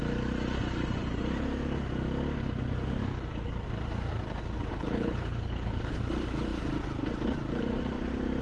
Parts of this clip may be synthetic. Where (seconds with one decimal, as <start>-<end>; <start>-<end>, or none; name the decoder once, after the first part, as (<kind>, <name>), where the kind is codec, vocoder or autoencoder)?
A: 4.7-6.0 (codec, HILCodec)